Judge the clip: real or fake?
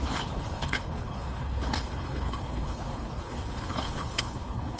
fake